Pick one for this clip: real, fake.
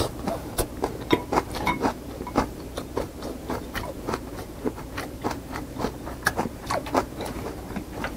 fake